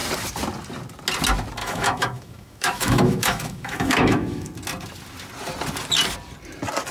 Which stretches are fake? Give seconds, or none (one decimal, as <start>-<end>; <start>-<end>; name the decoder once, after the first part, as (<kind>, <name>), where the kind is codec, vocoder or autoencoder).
1.6-4.5 (autoencoder, DAC-VAE)